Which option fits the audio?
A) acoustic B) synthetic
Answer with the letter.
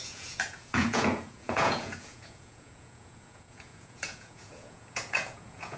B